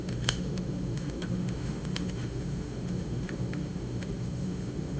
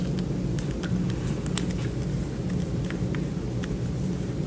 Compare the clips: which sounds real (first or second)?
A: second